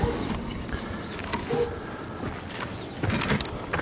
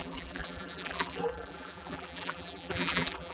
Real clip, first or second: first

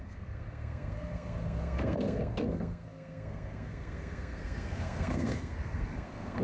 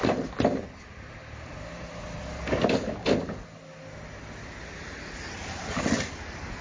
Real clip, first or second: second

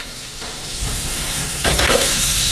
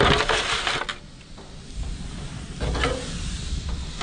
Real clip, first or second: second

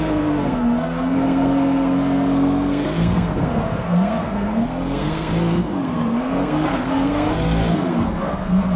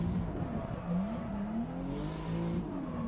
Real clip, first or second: second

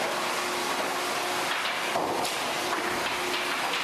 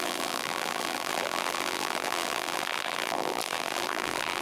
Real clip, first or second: first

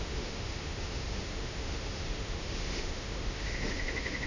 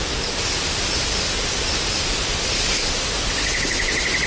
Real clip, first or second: second